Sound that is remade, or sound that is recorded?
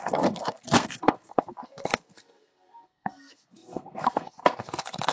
remade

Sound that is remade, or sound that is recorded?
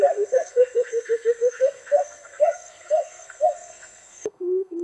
remade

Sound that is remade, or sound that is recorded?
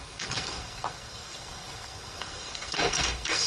remade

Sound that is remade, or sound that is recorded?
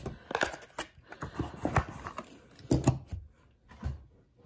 recorded